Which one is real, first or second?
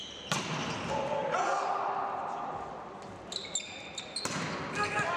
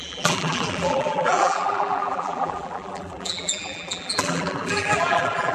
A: first